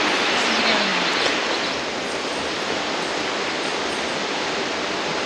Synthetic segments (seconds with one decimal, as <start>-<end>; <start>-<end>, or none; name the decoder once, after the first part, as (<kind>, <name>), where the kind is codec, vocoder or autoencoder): none